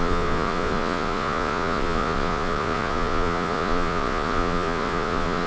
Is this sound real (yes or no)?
no